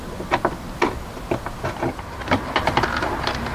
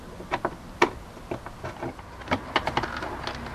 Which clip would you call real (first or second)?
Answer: second